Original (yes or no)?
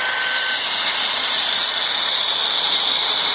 yes